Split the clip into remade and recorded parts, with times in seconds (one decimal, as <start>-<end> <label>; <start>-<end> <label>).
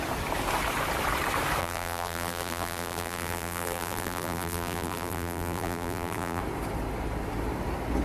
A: 0.0-1.6 recorded; 1.6-6.4 remade; 6.4-8.0 recorded